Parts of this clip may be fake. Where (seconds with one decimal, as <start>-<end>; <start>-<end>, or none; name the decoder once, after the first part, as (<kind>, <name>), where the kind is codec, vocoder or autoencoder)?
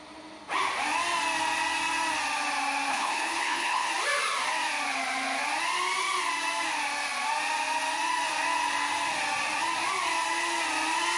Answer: 2.9-3.9 (codec, HILCodec)